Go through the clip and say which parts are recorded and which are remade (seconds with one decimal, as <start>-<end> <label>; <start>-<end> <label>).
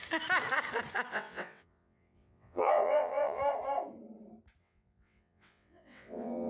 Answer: 0.0-1.1 recorded; 1.1-3.4 remade; 3.4-4.6 recorded; 4.6-6.5 remade